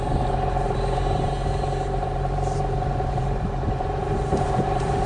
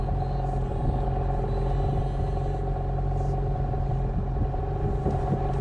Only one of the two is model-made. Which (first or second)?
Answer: first